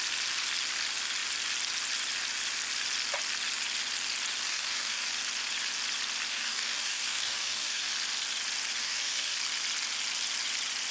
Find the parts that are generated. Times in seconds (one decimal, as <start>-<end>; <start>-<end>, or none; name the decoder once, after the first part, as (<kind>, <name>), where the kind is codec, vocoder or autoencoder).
4.5-5.1 (codec, DAC); 6.3-7.9; 8.8-9.4